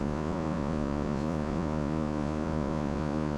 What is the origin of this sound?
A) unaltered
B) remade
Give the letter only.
B